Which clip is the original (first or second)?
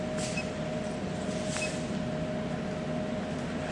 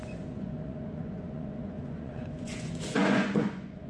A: first